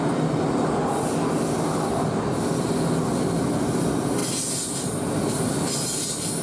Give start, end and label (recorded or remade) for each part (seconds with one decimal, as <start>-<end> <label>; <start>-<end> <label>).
0.0-6.4 recorded